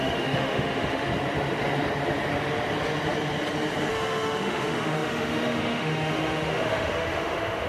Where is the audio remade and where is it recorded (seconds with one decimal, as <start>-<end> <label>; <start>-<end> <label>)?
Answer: 0.0-1.1 remade; 1.1-3.9 recorded; 3.9-7.7 remade